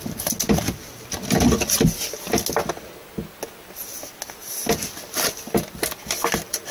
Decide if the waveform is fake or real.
real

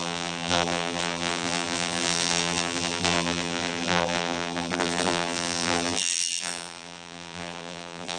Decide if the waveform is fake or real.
fake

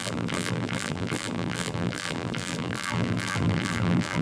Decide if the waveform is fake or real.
fake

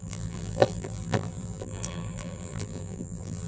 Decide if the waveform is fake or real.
fake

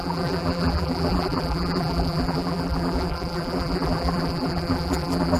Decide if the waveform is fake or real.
fake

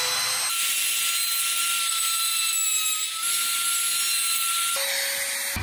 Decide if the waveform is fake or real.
real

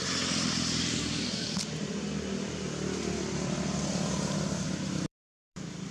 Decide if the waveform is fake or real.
fake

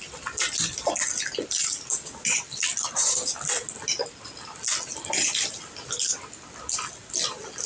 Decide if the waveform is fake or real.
real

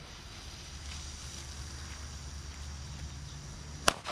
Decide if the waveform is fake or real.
real